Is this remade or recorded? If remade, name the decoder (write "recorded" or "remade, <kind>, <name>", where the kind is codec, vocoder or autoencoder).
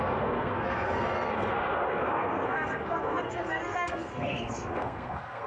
remade, codec, SNAC